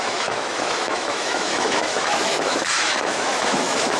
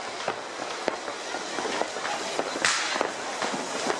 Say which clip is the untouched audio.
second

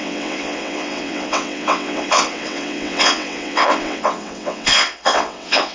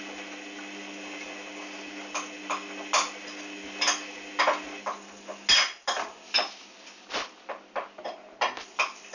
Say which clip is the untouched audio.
second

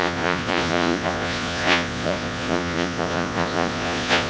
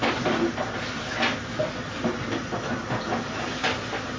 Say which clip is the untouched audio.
second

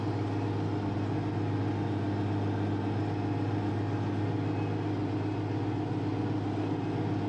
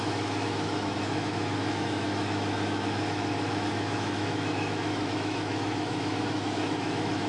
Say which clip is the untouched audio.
first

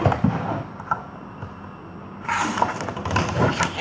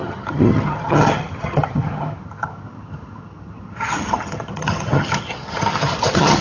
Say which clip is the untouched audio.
first